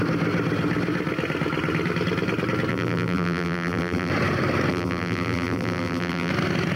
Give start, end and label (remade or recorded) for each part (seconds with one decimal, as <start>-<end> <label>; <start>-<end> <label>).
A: 0.0-2.7 recorded; 2.7-4.1 remade; 4.1-4.7 recorded; 4.7-6.3 remade; 6.3-6.8 recorded

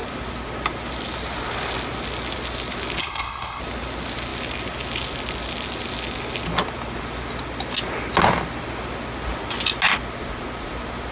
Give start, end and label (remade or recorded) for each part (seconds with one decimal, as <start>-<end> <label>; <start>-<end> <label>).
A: 0.0-3.0 recorded; 3.0-3.6 remade; 3.6-11.1 recorded